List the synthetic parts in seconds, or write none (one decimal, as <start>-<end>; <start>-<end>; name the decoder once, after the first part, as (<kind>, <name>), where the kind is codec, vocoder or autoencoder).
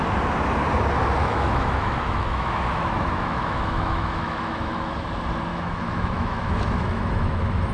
1.2-4.9 (autoencoder, DAC-VAE); 5.5-7.7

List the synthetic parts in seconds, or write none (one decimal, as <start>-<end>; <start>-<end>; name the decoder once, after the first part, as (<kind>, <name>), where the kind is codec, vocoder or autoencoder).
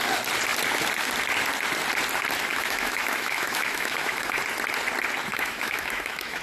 2.5-4.4 (autoencoder, DAC-VAE); 5.3-6.4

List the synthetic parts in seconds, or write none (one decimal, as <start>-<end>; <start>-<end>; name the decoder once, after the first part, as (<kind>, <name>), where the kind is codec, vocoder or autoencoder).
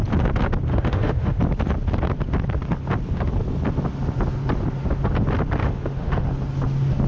0.7-1.4 (autoencoder, DAC-VAE); 5.6-6.3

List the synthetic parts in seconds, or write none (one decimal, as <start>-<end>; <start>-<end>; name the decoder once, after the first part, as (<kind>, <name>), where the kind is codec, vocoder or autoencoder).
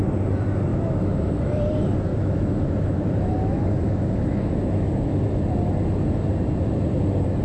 0.7-1.6 (autoencoder, DAC-VAE); 2.1-5.0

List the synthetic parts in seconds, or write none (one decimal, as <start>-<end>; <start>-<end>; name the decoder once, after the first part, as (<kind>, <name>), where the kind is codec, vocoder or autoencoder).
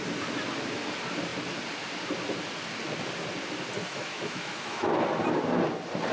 3.8-5.0 (autoencoder, DAC-VAE)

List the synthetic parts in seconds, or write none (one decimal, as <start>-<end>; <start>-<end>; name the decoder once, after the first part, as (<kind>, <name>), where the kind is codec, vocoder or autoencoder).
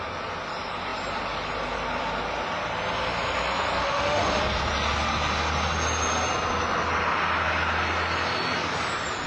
3.8-4.4 (autoencoder, DAC-VAE)